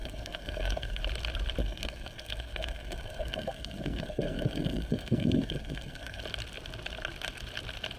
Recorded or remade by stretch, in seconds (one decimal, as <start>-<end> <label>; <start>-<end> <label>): 0.0-1.0 remade; 1.0-1.6 recorded; 1.6-6.2 remade; 6.2-8.0 recorded